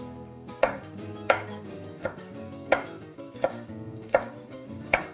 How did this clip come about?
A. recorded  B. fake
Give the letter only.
B